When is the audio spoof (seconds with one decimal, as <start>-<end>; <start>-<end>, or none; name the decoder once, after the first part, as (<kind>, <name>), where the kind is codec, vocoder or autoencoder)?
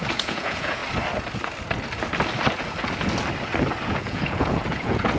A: 0.0-0.8 (vocoder, Vocos); 3.9-5.2